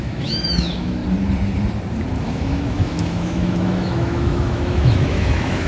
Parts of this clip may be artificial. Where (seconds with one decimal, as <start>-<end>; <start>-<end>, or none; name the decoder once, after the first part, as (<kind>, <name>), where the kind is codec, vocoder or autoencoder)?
0.0-1.0 (autoencoder, DAC-VAE); 2.2-5.7